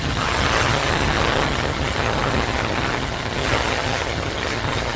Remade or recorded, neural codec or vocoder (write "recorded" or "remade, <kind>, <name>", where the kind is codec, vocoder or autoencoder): remade, vocoder, HiFi-GAN